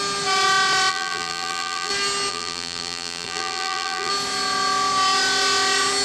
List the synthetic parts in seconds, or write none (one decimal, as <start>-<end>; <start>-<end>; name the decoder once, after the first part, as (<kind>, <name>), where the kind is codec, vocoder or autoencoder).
0.9-1.9 (vocoder, BigVGAN v2); 2.3-4.1